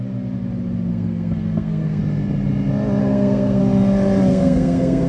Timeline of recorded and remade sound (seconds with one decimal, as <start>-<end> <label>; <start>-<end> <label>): 0.0-0.9 recorded; 0.9-2.0 remade; 2.0-3.0 recorded; 3.0-3.6 remade; 3.6-4.3 recorded; 4.3-5.1 remade